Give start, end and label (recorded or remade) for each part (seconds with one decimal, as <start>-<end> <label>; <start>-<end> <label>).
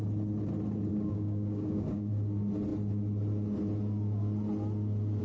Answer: 0.0-0.9 recorded; 0.9-2.1 remade; 2.1-5.2 recorded